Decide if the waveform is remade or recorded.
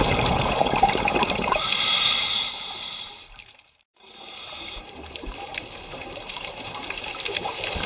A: remade